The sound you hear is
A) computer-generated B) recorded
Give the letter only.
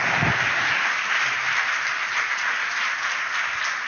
B